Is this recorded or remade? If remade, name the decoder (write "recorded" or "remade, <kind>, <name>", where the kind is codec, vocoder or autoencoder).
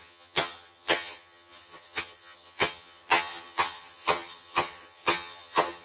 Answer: remade, vocoder, HiFi-GAN